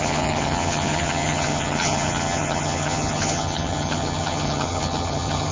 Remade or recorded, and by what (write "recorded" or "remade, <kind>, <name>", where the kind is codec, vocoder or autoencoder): remade, vocoder, HiFi-GAN